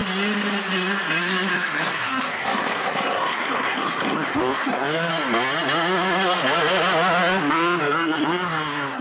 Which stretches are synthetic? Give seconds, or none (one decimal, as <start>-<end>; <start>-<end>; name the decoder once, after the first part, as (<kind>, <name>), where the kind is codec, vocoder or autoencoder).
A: 1.2-5.1 (codec, SNAC); 7.8-9.0